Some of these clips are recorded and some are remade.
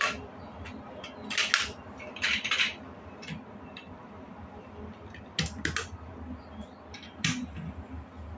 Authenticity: recorded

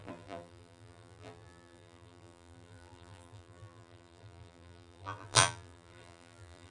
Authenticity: remade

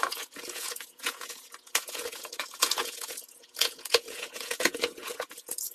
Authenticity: remade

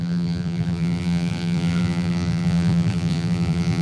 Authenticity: remade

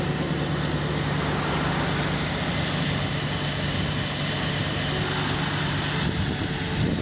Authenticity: recorded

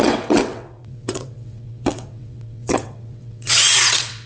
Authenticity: remade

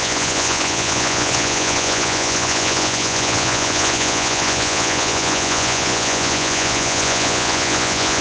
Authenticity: remade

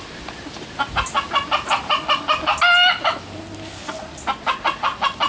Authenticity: recorded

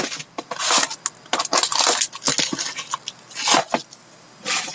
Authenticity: recorded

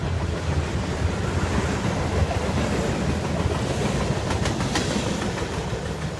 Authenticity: recorded